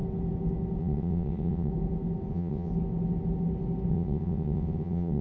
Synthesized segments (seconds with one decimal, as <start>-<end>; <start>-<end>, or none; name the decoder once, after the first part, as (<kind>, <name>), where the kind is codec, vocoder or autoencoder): 0.8-1.7 (vocoder, WaveNeXt); 2.3-2.7; 3.9-5.2